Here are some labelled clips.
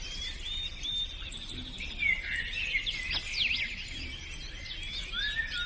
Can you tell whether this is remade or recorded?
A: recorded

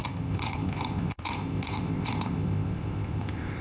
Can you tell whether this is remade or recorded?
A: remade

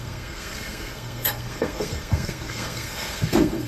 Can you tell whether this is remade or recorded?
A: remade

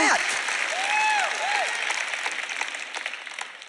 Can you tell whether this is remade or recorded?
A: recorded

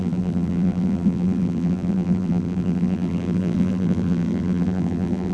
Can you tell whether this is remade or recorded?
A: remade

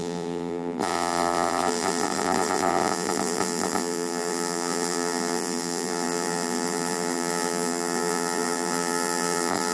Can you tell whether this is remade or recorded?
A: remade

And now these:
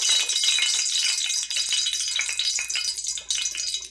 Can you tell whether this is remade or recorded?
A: recorded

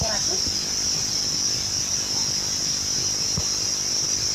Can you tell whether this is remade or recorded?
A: recorded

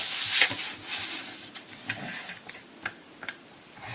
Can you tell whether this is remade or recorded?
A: recorded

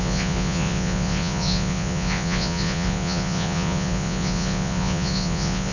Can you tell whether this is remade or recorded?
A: remade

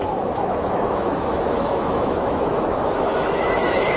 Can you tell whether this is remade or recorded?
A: remade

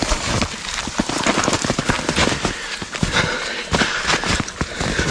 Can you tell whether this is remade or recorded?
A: recorded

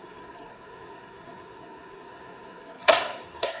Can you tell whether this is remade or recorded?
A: remade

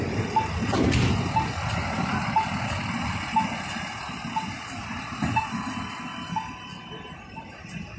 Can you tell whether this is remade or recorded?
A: recorded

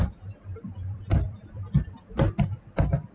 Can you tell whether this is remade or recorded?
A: remade